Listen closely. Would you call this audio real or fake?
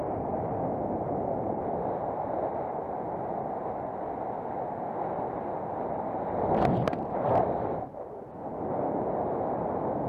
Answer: real